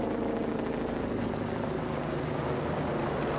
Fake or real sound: real